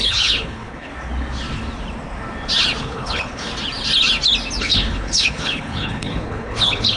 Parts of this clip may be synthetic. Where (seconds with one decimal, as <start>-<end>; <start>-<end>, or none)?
0.0-0.9; 2.8-3.5; 4.6-7.0